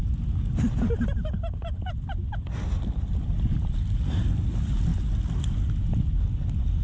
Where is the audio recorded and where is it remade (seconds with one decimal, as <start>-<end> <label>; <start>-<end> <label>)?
0.0-6.8 recorded